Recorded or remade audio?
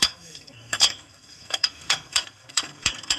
remade